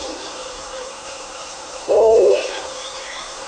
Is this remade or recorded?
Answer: remade